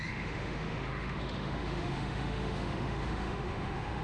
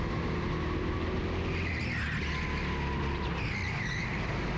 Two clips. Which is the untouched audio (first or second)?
second